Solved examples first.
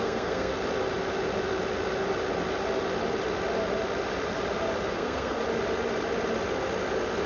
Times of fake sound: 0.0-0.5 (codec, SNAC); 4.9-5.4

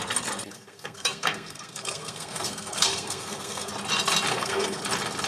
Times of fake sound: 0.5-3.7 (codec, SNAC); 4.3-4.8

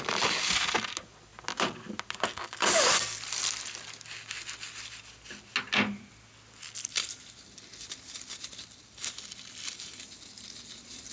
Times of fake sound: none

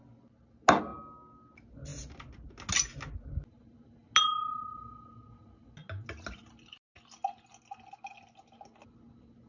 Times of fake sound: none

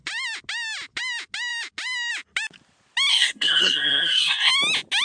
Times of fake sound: 3.1-4.5 (codec, SNAC)